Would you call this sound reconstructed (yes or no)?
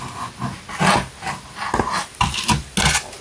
no